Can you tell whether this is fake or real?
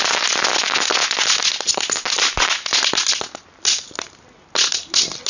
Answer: real